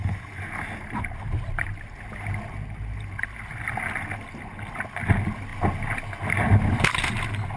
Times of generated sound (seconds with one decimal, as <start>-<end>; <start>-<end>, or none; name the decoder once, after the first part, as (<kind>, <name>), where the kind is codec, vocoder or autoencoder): none